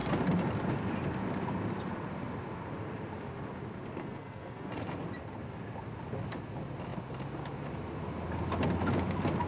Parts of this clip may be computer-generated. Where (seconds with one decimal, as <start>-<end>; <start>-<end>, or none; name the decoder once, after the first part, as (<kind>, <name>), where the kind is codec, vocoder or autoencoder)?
4.0-4.7 (codec, SNAC)